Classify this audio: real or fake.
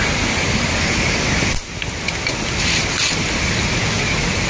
real